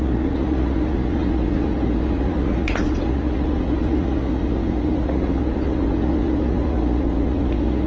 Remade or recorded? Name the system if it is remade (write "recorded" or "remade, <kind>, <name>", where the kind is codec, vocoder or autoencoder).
remade, vocoder, Vocos